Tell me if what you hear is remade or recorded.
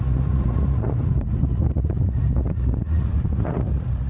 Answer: remade